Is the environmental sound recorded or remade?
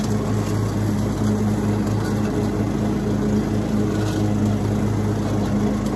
recorded